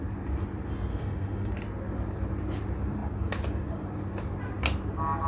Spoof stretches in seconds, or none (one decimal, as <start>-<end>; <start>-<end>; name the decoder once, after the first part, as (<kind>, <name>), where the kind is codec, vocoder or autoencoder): 0.9-1.5 (autoencoder, DAC-VAE)